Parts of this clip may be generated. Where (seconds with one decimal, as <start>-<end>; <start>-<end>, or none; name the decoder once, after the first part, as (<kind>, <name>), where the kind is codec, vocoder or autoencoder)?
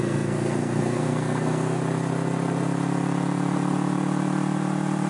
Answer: 0.0-1.8 (codec, SNAC)